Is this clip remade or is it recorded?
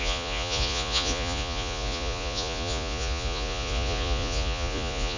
remade